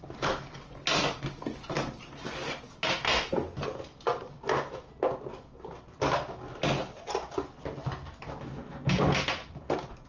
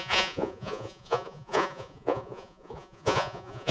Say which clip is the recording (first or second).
first